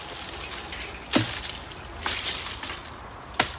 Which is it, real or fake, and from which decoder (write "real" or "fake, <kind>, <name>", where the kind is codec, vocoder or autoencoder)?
real